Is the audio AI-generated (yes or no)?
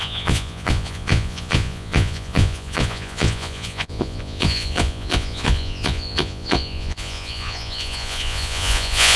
yes